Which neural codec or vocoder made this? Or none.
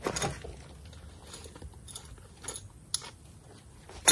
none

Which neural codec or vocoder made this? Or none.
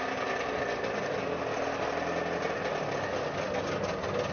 none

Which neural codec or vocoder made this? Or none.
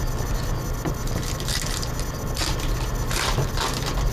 none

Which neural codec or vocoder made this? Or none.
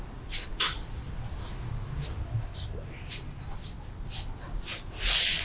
none